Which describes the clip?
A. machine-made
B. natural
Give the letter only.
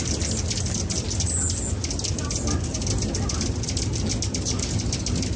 B